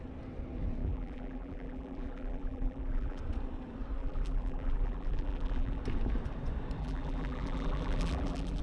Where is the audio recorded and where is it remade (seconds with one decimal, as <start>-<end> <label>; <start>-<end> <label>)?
0.0-0.8 recorded; 0.8-3.2 remade; 3.2-4.0 recorded; 4.0-5.8 remade; 5.8-6.8 recorded; 6.8-8.6 remade